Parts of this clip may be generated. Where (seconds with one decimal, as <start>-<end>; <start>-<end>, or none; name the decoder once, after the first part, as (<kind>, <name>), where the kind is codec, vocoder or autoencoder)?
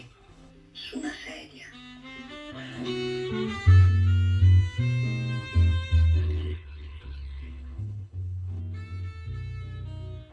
0.0-0.5 (codec, HILCodec); 2.5-2.9; 6.2-8.6